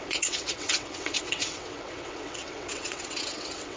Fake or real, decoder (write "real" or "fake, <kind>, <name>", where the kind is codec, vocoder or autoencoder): fake, vocoder, WaveNeXt